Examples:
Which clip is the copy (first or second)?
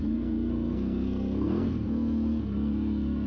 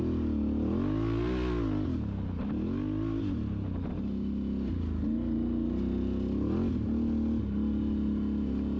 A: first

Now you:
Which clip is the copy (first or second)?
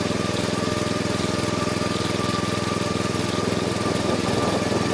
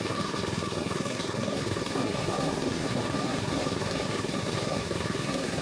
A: second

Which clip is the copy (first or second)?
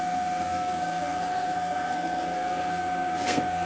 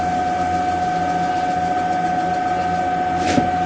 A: first